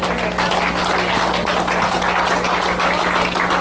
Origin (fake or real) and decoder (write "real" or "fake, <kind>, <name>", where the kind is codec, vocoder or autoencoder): real